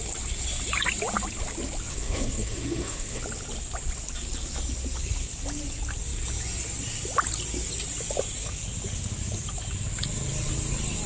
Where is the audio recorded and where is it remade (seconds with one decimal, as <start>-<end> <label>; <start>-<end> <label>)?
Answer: 0.0-1.9 recorded; 1.9-3.2 remade; 3.2-11.1 recorded